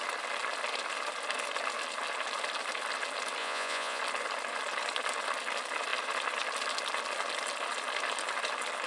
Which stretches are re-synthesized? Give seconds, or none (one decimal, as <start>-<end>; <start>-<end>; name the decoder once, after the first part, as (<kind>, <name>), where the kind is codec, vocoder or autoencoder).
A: 3.4-4.0 (vocoder, Vocos)